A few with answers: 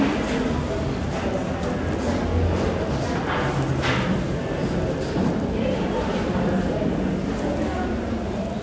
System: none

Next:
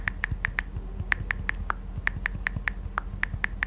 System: none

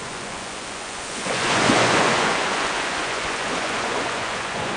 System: vocoder, Vocos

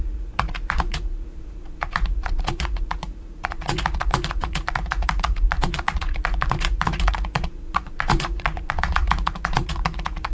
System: vocoder, Vocos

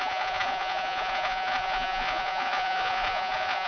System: vocoder, Vocos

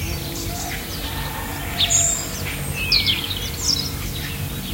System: none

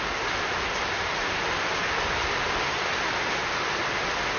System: none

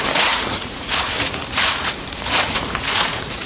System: vocoder, Vocos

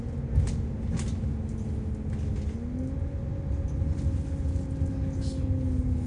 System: none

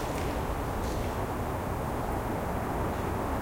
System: none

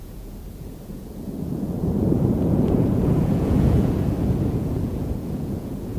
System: vocoder, Vocos